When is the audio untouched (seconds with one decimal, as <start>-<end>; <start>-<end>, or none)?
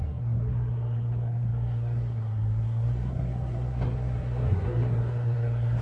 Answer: none